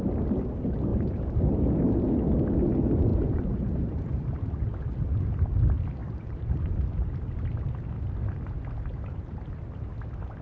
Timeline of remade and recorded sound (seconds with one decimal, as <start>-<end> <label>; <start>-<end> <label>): 0.0-0.9 recorded; 0.9-1.4 remade; 1.4-3.1 recorded; 3.1-4.1 remade; 4.1-6.0 recorded; 6.0-7.2 remade; 7.2-8.9 recorded; 8.9-9.4 remade; 9.4-10.4 recorded